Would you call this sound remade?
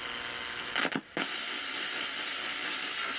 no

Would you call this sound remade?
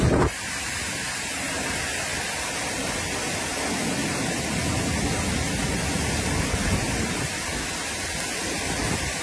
no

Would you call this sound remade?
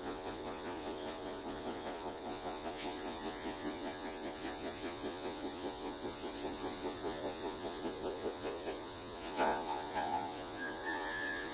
yes